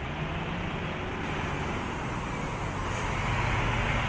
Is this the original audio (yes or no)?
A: yes